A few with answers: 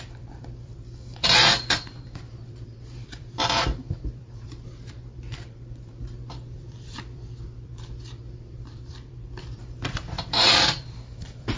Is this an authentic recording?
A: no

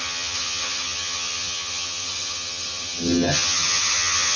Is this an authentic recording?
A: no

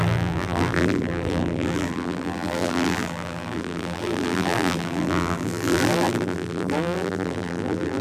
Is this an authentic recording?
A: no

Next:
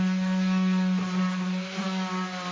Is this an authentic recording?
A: yes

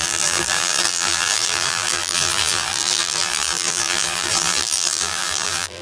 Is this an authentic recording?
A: no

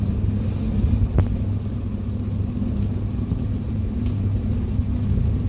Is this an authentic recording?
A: yes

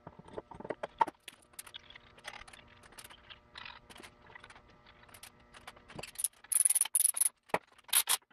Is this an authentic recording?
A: yes